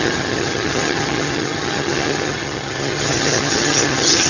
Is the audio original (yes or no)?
no